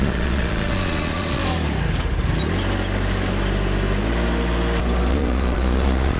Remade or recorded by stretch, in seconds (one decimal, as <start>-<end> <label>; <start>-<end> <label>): 0.0-1.4 remade; 1.4-5.1 recorded; 5.1-6.2 remade